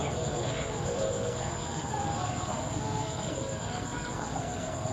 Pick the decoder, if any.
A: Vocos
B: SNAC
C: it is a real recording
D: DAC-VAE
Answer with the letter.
B